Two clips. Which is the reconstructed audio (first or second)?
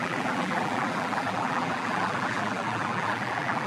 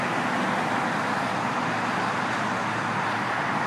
first